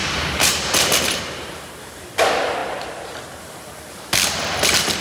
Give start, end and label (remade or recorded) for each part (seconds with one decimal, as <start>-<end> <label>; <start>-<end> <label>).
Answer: 0.0-1.7 remade; 1.7-5.0 recorded